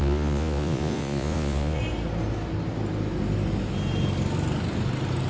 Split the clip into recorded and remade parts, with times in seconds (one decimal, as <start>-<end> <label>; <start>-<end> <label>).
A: 0.0-1.8 remade; 1.8-5.3 recorded